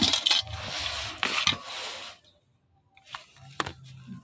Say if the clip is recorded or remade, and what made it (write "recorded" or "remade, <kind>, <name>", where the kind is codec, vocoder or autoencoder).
recorded